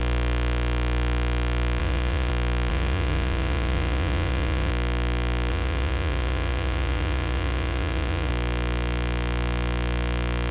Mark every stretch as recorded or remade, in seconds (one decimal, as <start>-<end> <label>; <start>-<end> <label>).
0.0-1.8 recorded; 1.8-2.3 remade; 2.3-2.7 recorded; 2.7-4.7 remade; 4.7-5.5 recorded; 5.5-8.3 remade; 8.3-10.5 recorded